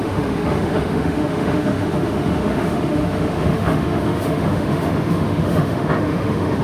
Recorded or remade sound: remade